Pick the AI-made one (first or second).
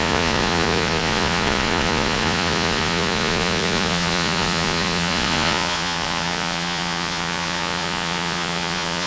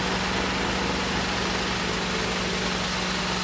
first